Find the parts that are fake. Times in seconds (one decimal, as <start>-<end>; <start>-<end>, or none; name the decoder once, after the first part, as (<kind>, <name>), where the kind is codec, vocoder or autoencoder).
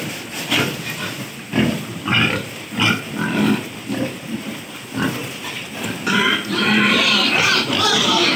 none